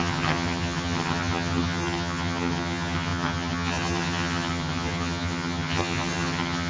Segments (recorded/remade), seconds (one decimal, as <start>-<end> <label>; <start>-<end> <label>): 0.0-6.7 remade